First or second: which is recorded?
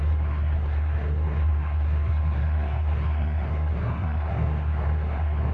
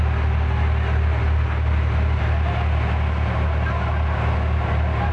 second